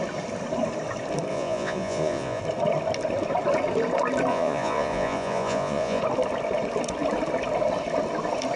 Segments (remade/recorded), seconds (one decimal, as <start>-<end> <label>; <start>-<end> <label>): 0.0-1.3 recorded; 1.3-2.4 remade; 2.4-4.3 recorded; 4.3-6.0 remade; 6.0-8.6 recorded